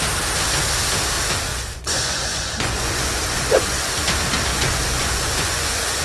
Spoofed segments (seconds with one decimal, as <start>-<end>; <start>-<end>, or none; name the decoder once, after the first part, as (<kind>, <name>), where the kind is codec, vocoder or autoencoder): 1.5-3.9 (vocoder, Vocos); 4.5-6.0